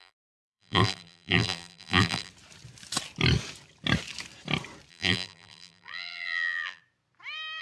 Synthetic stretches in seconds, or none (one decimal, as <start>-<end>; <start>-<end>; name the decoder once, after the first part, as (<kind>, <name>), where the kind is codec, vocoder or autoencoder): 0.0-2.3 (vocoder, BigVGAN v2); 4.9-6.8